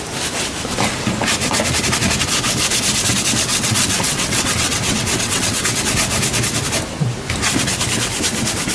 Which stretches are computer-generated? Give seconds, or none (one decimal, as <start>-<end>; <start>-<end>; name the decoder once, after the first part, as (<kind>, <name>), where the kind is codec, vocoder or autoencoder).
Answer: 3.5-5.8 (vocoder, WaveNeXt)